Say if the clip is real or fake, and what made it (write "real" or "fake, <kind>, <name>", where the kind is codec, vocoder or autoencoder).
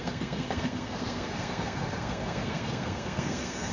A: fake, codec, SNAC